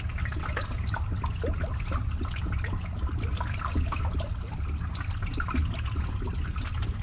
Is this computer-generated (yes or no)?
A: no